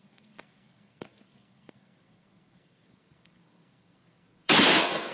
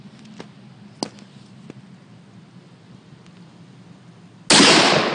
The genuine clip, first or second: second